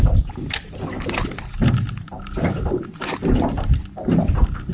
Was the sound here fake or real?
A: real